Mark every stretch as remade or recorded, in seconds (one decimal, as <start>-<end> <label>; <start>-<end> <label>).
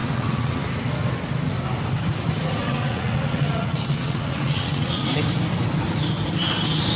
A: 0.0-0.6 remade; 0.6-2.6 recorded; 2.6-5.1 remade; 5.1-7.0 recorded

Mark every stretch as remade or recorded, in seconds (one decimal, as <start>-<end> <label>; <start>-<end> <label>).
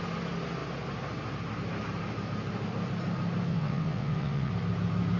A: 0.0-3.5 recorded; 3.5-4.5 remade; 4.5-5.2 recorded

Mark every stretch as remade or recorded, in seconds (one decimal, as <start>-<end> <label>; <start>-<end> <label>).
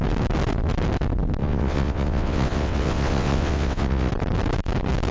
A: 0.0-1.4 recorded; 1.4-4.1 remade; 4.1-5.1 recorded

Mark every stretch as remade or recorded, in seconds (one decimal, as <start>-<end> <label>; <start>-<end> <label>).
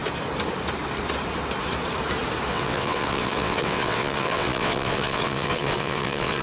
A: 0.0-2.5 recorded; 2.5-6.4 remade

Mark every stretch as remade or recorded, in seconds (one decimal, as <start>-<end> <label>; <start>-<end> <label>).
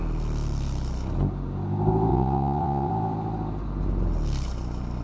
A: 0.0-2.1 recorded; 2.1-2.9 remade; 2.9-5.0 recorded